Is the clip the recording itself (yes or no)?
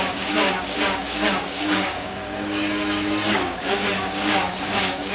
no